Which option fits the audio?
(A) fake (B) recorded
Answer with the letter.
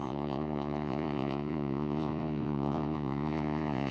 A